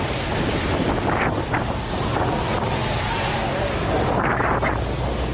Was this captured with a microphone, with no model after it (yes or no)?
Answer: yes